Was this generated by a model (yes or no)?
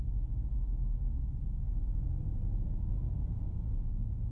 yes